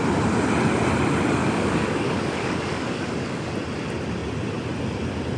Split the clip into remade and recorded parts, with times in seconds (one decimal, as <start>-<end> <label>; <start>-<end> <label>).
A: 0.0-1.4 recorded; 1.4-3.5 remade; 3.5-5.4 recorded